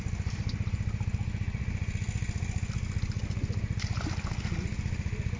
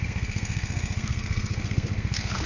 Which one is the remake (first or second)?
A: second